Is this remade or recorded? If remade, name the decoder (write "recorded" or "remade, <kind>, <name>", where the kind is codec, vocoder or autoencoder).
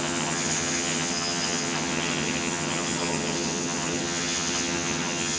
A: remade, vocoder, HiFi-GAN